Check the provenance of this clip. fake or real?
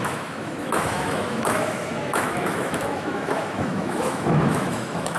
fake